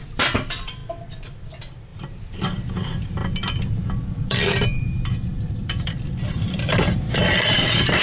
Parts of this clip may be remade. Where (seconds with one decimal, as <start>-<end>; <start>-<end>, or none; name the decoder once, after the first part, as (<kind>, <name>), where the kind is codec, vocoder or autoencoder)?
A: 0.0-0.8 (vocoder, BigVGAN v2); 1.4-3.2; 4.1-8.0

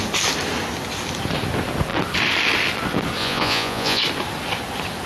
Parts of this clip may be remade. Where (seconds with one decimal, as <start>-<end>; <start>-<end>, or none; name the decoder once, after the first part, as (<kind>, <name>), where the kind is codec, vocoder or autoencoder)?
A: 3.2-4.0 (vocoder, Vocos)

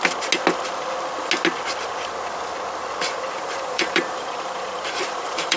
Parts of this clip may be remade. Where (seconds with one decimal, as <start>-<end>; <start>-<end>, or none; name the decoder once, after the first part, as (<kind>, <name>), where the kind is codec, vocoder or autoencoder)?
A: 3.3-5.6 (vocoder, BigVGAN v2)

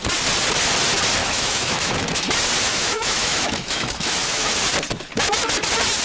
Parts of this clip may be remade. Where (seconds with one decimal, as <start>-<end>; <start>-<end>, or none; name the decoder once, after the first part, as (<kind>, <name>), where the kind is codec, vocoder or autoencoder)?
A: 1.2-2.2 (autoencoder, DAC-VAE); 2.7-4.5

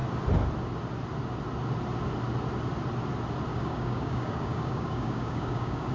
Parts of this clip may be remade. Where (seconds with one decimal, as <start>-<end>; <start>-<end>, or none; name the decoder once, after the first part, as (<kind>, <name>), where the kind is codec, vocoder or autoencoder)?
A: 3.5-5.9 (codec, DAC)

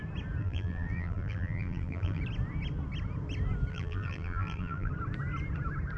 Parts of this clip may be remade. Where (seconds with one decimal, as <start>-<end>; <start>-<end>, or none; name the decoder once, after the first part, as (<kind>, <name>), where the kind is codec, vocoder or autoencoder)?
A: 0.4-2.2 (vocoder, BigVGAN v2); 3.7-4.9